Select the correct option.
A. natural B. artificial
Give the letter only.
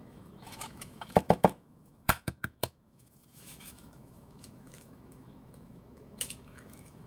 B